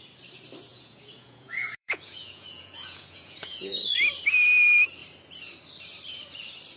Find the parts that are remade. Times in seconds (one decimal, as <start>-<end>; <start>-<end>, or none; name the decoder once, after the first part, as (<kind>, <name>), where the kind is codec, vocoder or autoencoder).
0.7-3.8 (vocoder, Vocos)